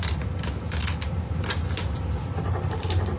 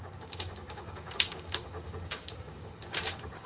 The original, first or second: first